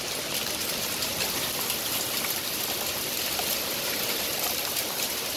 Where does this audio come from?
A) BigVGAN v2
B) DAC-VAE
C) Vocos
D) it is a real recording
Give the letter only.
D